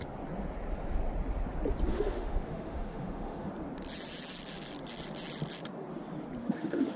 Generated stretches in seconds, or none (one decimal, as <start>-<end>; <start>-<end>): 1.9-3.5; 6.4-7.0